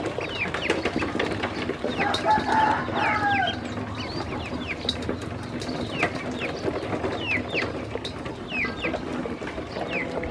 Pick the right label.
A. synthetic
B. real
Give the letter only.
B